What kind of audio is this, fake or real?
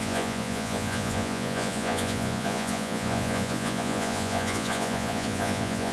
fake